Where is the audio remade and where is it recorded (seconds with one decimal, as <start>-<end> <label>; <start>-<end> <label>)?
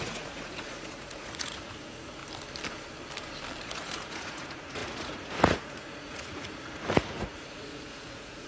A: 0.0-2.2 remade; 2.2-3.6 recorded; 3.6-8.5 remade